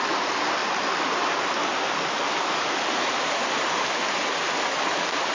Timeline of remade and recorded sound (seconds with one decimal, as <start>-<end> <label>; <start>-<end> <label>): 0.0-5.3 recorded